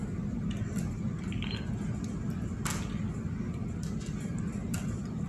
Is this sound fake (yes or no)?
no